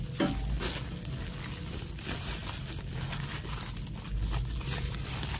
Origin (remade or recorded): recorded